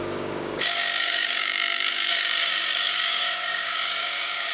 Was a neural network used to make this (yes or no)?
yes